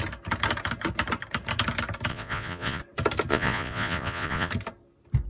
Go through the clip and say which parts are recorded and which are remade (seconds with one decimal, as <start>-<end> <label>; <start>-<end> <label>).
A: 0.0-2.1 recorded; 2.1-2.8 remade; 2.8-3.3 recorded; 3.3-4.5 remade; 4.5-5.3 recorded